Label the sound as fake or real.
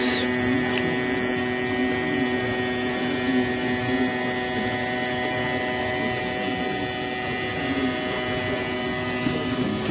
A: real